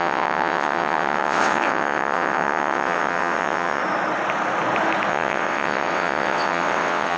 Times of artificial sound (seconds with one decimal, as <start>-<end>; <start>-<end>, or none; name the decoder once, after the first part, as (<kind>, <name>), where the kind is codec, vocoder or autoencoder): 0.0-3.8 (vocoder, WaveNeXt); 5.1-7.2

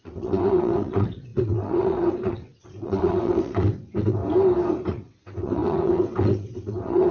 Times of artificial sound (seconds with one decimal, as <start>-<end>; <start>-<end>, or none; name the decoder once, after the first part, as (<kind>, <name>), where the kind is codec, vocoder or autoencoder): 0.0-4.2 (vocoder, WaveNeXt); 4.9-7.1

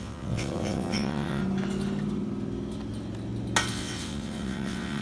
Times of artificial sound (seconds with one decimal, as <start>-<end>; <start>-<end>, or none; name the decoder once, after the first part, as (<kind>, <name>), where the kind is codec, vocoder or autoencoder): 0.0-1.4 (vocoder, WaveNeXt); 3.7-5.0

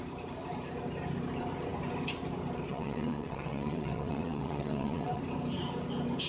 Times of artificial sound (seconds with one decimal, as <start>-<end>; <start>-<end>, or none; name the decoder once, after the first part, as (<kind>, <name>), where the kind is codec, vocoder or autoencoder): 2.7-5.2 (vocoder, WaveNeXt)

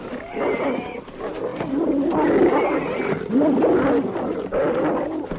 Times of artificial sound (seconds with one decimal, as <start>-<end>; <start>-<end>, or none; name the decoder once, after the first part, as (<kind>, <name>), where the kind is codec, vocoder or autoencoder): none

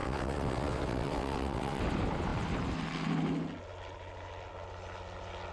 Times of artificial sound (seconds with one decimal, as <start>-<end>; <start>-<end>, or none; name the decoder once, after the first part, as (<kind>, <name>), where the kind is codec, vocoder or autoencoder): 0.0-1.8 (vocoder, WaveNeXt)

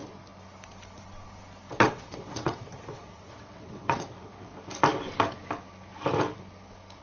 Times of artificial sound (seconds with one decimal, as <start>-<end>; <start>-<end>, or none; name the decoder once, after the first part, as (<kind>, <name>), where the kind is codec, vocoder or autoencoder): 1.7-4.5 (vocoder, WaveNeXt)

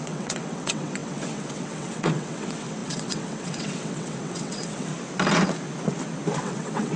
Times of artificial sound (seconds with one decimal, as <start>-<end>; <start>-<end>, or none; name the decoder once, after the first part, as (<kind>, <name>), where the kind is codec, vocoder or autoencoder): 0.0-4.9 (vocoder, WaveNeXt); 6.4-7.0